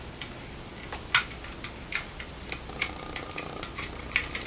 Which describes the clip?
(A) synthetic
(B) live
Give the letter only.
B